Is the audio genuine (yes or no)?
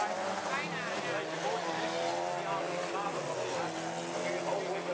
yes